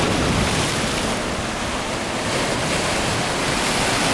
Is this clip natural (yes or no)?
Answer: yes